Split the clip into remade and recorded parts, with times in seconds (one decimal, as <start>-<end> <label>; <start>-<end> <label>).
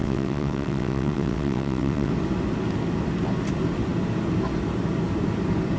0.0-2.1 remade; 2.1-5.8 recorded